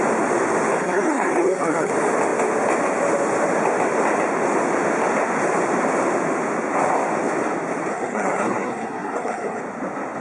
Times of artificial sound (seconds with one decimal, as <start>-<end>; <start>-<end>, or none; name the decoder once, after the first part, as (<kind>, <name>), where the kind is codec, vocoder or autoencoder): 0.8-1.9 (codec, SNAC); 7.9-9.6